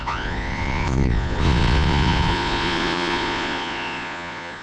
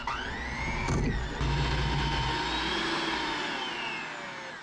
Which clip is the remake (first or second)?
first